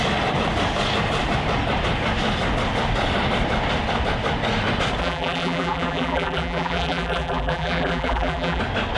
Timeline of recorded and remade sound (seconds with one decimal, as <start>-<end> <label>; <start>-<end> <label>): 0.0-5.0 recorded; 5.0-8.6 remade; 8.6-9.0 recorded